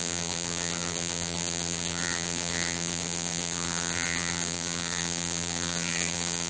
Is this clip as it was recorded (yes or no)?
no